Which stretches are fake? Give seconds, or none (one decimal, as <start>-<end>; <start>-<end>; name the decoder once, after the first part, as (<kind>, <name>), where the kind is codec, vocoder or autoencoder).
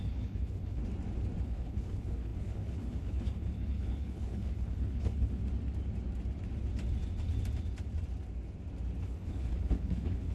0.0-0.8 (codec, HILCodec); 1.4-5.4; 9.0-10.3